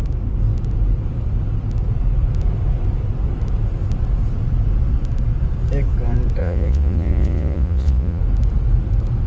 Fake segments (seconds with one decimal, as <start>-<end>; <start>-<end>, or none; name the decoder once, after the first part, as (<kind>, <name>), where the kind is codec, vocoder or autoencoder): 6.4-8.2 (vocoder, Vocos)